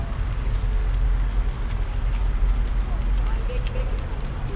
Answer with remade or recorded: recorded